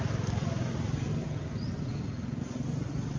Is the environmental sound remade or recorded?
remade